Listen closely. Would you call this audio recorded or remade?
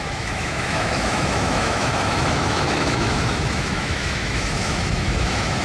remade